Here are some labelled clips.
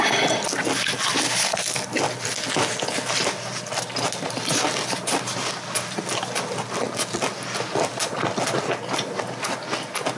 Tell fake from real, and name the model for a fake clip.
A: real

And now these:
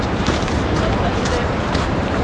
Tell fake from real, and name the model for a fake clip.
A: fake, vocoder, BigVGAN v2